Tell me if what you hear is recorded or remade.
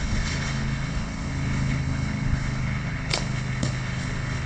remade